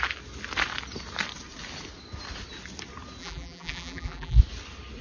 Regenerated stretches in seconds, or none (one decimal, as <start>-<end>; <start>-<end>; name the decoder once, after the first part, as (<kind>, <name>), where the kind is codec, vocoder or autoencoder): 3.2-4.4 (vocoder, BigVGAN v2)